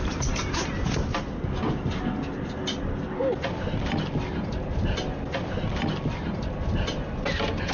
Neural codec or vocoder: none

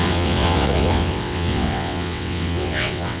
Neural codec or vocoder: vocoder, WaveNeXt